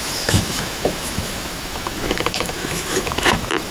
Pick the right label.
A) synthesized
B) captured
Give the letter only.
A